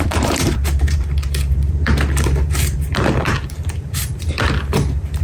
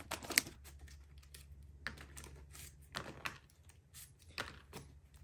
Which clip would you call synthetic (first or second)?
first